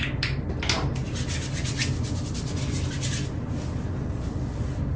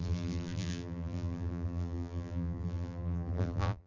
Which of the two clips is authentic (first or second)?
first